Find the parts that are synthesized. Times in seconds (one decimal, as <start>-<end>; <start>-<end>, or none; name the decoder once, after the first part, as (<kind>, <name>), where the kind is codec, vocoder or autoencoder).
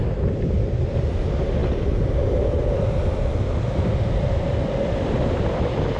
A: none